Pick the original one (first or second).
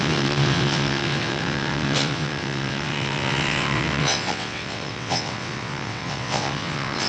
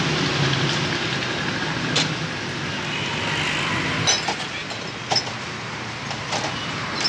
second